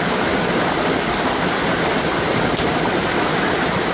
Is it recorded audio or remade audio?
recorded